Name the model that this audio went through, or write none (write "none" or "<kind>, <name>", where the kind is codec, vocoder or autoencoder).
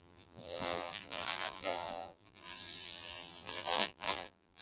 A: vocoder, BigVGAN v2